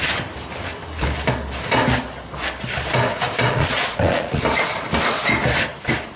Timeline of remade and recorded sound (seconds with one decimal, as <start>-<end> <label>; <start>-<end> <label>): 0.0-3.4 recorded; 3.4-4.4 remade; 4.4-6.2 recorded